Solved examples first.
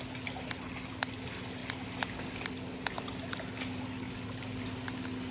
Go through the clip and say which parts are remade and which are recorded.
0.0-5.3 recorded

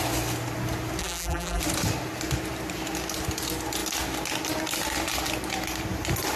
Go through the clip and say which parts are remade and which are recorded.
0.0-1.0 recorded; 1.0-1.6 remade; 1.6-6.4 recorded

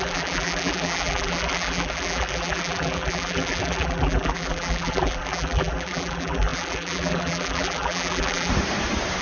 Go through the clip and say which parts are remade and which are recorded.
0.0-8.5 remade; 8.5-9.2 recorded

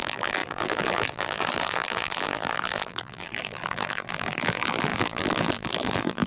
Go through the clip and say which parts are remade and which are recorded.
0.0-6.3 remade